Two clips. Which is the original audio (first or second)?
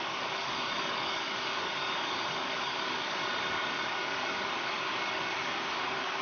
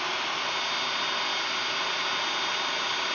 second